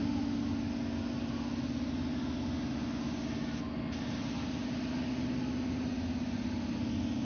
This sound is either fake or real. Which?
real